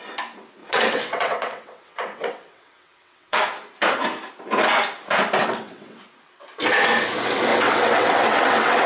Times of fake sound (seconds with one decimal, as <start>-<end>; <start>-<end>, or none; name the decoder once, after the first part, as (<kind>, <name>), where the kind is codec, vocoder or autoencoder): 0.6-3.4 (vocoder, WaveNeXt); 5.4-6.0; 7.5-8.9